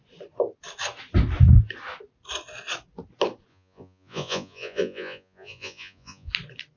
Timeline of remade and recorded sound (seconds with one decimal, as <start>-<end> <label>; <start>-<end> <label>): 0.0-3.5 recorded; 3.5-6.3 remade; 6.3-6.8 recorded